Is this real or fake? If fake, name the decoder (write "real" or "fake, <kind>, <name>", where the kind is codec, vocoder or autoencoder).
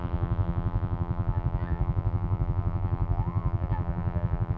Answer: fake, vocoder, BigVGAN v2